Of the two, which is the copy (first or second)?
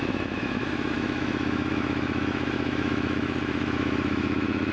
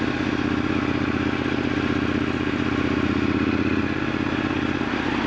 first